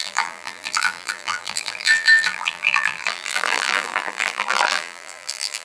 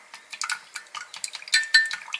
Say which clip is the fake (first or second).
first